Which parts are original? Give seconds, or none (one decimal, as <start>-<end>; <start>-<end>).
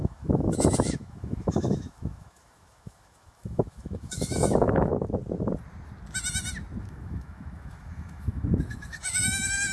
4.9-6.8